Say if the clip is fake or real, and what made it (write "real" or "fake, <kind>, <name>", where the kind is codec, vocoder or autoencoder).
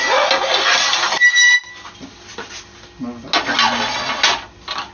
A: real